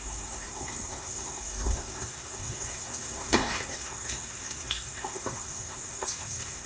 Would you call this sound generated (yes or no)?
yes